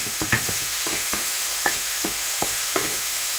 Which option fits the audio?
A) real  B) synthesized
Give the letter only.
B